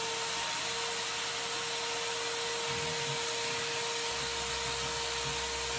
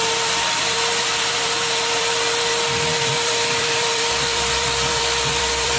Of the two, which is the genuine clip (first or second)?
first